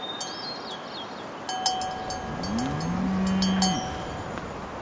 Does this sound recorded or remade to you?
recorded